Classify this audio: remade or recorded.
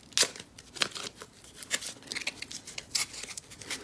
recorded